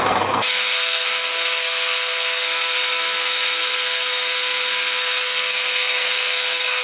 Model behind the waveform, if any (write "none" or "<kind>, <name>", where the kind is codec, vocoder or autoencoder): codec, SNAC